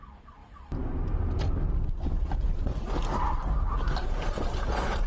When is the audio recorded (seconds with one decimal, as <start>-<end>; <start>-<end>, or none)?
0.0-5.1